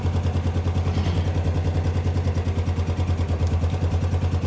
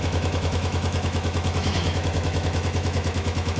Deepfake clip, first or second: second